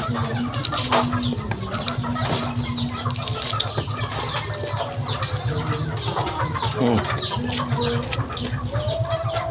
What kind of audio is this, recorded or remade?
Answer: recorded